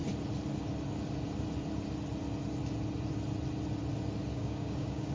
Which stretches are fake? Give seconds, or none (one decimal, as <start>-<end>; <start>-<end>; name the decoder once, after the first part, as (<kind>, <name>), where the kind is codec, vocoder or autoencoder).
4.3-5.1 (codec, DAC)